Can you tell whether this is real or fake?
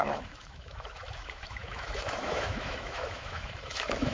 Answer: fake